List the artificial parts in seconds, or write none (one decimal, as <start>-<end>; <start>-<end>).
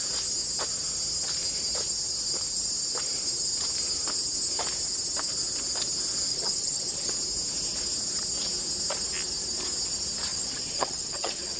6.3-7.1; 10.3-11.6